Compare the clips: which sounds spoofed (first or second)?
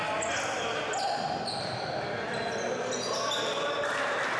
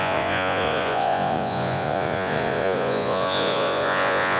second